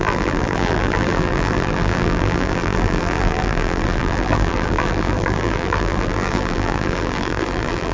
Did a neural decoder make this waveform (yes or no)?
yes